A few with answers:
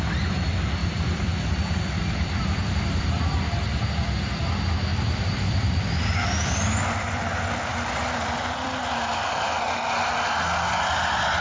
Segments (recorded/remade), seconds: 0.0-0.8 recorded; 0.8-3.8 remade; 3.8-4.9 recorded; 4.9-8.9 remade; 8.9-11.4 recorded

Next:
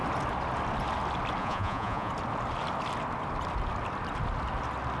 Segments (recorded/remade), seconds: 0.0-1.4 recorded; 1.4-2.1 remade; 2.1-5.0 recorded

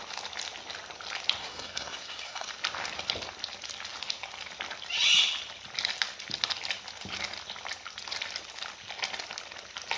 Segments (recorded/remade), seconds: 0.0-1.4 recorded; 1.4-2.5 remade; 2.5-10.0 recorded

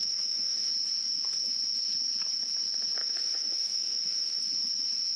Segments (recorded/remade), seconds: 0.0-0.7 remade; 0.7-3.0 recorded; 3.0-4.4 remade; 4.4-5.2 recorded